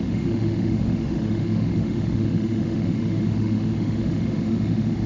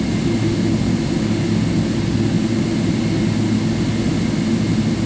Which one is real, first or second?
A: second